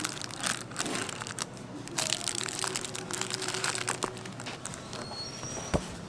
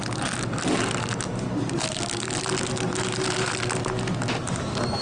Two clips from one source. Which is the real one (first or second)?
second